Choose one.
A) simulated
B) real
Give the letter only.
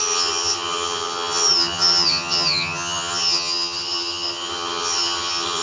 A